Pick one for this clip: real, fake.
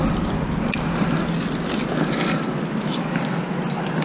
real